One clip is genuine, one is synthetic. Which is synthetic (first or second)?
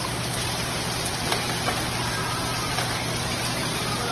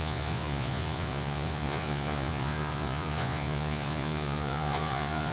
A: second